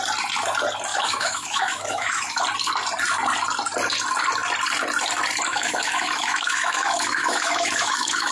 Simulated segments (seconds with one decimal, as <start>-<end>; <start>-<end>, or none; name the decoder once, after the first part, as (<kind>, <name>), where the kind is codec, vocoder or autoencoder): 0.9-2.4 (autoencoder, DAC-VAE); 5.5-8.3